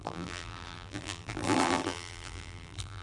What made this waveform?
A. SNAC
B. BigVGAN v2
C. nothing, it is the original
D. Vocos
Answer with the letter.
B